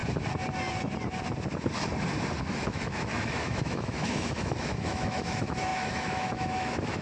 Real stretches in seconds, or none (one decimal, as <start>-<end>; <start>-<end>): 0.0-2.4